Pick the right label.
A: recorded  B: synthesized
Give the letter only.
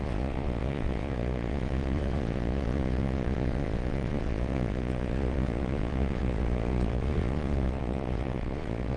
B